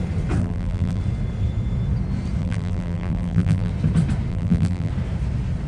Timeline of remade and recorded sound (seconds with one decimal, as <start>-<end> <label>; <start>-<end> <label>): 0.0-0.4 recorded; 0.4-1.0 remade; 1.0-2.4 recorded; 2.4-3.7 remade; 3.7-4.3 recorded; 4.3-4.9 remade; 4.9-5.7 recorded